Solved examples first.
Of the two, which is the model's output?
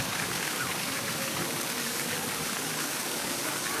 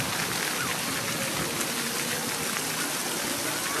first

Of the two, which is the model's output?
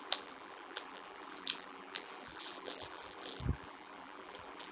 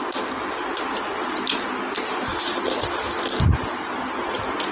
first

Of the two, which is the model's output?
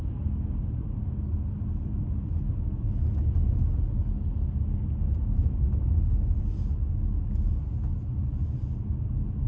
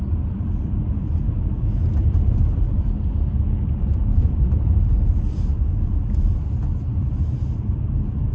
second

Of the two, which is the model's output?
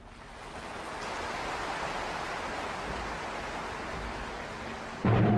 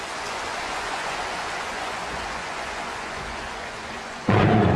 second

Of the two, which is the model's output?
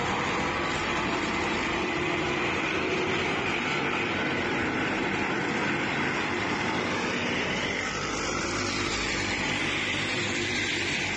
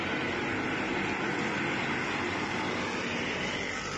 first